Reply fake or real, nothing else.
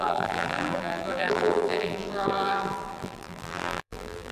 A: fake